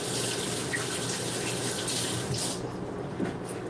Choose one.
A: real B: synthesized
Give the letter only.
A